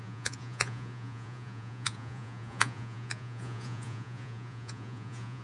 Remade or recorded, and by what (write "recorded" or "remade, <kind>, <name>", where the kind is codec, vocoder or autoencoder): remade, vocoder, Vocos